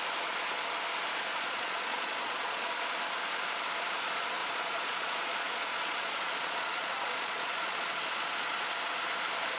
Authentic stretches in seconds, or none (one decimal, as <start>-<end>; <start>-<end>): 0.0-1.3; 2.7-4.4; 8.7-9.6